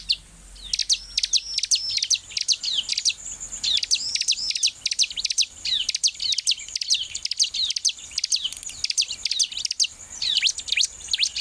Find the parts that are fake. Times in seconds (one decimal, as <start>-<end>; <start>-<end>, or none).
none

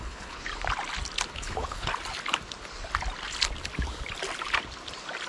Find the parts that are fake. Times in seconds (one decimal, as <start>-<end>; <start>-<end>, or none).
0.0-0.5; 1.3-1.9

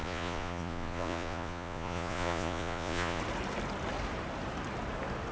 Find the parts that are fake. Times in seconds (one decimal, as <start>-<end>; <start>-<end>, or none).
0.0-3.2